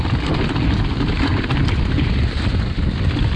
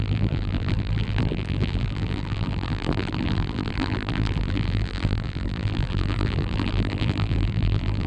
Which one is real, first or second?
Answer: first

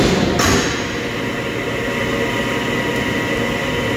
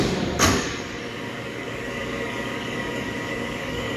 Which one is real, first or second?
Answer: first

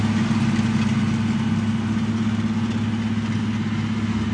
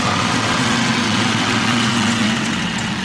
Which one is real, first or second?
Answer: first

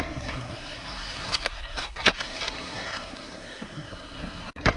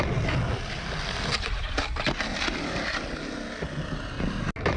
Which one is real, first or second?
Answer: second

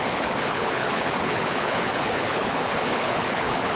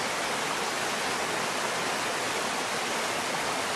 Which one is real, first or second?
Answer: second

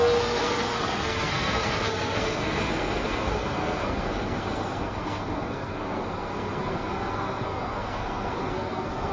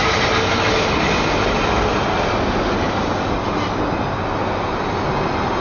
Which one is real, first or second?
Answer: second